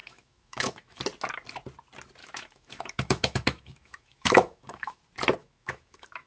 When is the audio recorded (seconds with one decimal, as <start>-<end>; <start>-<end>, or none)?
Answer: 1.0-2.2; 5.0-5.4